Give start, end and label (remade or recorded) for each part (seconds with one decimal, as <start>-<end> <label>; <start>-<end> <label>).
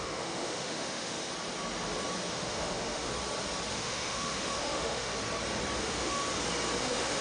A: 0.0-1.3 remade; 1.3-2.3 recorded; 2.3-3.1 remade; 3.1-3.7 recorded; 3.7-5.1 remade; 5.1-5.8 recorded; 5.8-6.2 remade; 6.2-6.8 recorded; 6.8-7.2 remade